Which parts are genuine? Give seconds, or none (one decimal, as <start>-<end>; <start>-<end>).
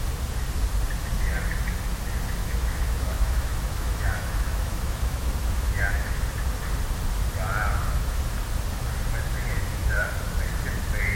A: 0.0-2.4; 6.2-7.7; 8.2-9.3; 10.0-11.2